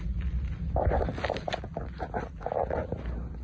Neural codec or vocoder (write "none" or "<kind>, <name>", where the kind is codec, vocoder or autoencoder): none